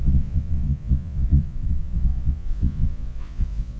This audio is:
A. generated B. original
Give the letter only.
A